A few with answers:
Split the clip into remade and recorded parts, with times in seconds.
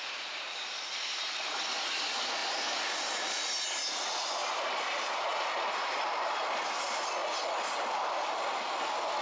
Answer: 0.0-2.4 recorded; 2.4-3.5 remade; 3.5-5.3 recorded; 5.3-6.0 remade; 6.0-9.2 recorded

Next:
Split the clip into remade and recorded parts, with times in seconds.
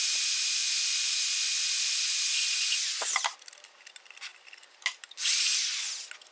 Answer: 0.0-6.3 recorded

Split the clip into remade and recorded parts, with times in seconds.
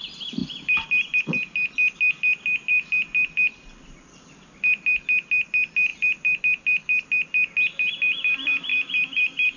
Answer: 0.0-0.4 recorded; 0.4-1.2 remade; 1.2-2.7 recorded; 2.7-4.2 remade; 4.2-5.9 recorded; 5.9-6.4 remade; 6.4-8.7 recorded; 8.7-9.6 remade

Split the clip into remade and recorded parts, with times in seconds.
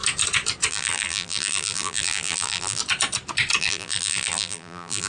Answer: 0.0-0.7 recorded; 0.7-2.8 remade; 2.8-3.6 recorded; 3.6-5.1 remade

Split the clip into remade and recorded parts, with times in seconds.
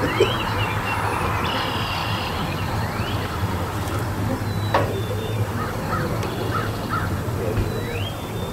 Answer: 0.0-2.0 recorded; 2.0-5.8 remade; 5.8-8.5 recorded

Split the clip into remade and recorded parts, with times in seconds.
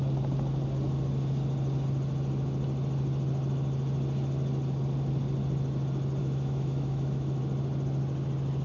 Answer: 0.0-6.2 recorded; 6.2-7.4 remade; 7.4-8.6 recorded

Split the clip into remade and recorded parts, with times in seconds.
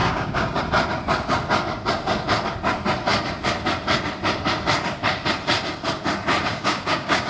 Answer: 0.0-0.6 remade; 0.6-6.5 recorded; 6.5-7.3 remade